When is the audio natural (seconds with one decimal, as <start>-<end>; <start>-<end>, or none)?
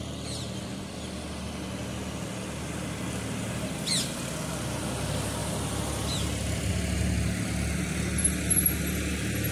0.0-9.5